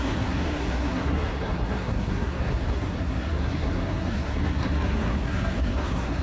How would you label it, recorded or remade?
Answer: remade